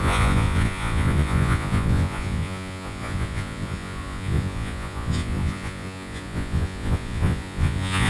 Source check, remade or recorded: remade